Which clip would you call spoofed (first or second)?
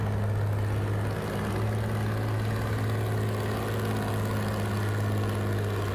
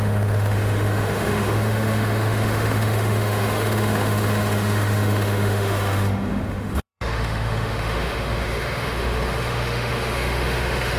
second